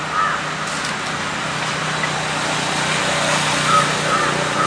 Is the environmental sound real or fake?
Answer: real